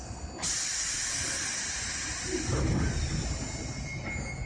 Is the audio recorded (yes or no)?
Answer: yes